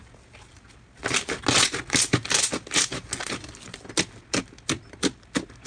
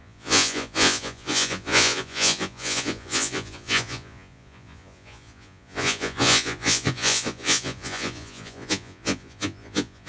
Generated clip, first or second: second